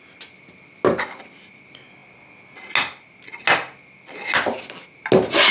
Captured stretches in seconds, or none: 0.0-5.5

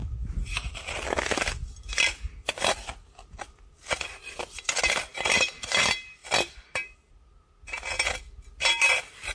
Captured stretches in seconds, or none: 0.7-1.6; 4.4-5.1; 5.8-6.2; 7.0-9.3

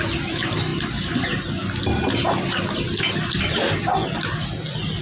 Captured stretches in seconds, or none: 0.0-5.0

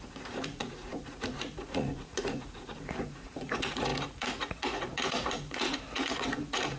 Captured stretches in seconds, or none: none

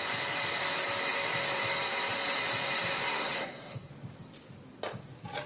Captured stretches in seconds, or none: 0.0-3.1; 3.9-5.5

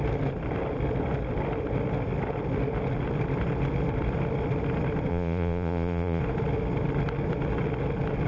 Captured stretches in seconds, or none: 0.0-5.1; 6.2-8.3

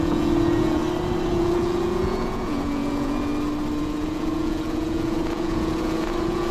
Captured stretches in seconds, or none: 0.8-1.3; 3.3-3.8